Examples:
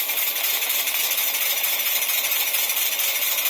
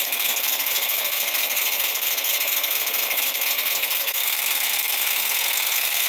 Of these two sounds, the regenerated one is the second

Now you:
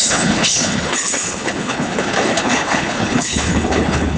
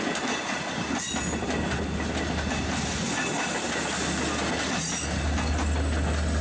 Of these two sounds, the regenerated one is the first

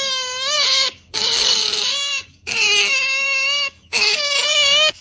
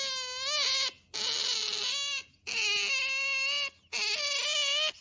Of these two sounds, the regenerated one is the first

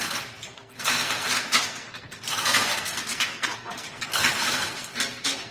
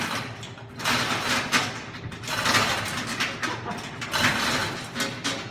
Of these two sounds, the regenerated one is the first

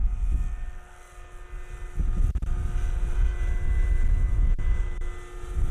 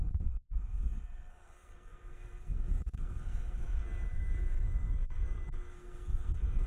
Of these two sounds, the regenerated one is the second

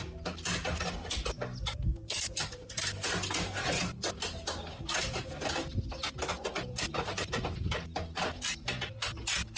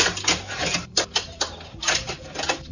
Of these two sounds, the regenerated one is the second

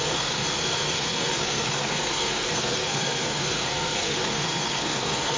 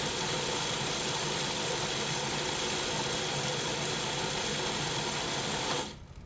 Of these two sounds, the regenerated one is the first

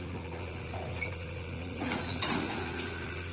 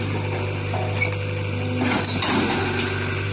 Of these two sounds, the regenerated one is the first